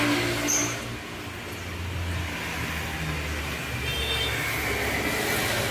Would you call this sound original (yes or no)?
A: yes